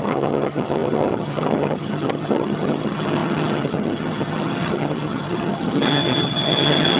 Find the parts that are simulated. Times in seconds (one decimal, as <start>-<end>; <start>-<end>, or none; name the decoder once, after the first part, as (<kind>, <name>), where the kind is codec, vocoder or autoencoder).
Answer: 0.0-7.0 (vocoder, HiFi-GAN)